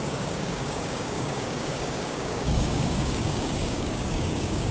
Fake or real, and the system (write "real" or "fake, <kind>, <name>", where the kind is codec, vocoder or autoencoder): fake, codec, DAC